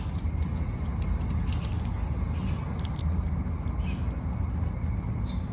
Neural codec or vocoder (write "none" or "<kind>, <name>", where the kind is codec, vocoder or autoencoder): none